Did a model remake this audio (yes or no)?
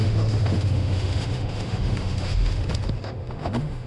yes